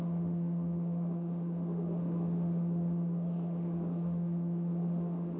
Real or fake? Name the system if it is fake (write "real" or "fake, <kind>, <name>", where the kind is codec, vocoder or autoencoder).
fake, autoencoder, DAC-VAE